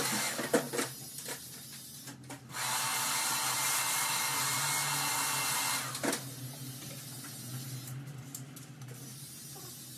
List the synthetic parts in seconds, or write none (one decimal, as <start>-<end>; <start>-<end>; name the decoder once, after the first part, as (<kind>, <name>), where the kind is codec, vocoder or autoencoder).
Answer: none